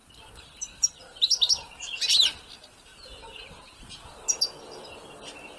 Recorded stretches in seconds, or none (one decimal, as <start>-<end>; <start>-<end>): 1.0-5.6